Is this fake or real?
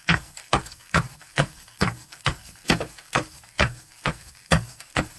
fake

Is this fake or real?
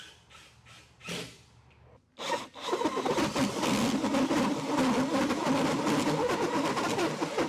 real